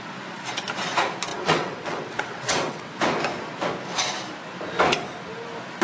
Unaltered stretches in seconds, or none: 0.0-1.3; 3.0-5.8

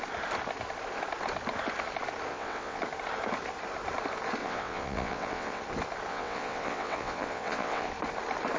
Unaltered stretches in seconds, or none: 0.0-2.3; 2.8-4.4; 5.6-6.1; 7.9-8.6

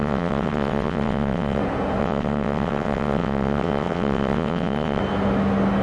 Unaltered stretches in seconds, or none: 1.6-2.0; 5.0-5.8

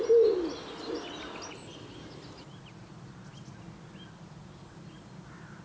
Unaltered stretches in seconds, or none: 0.0-5.6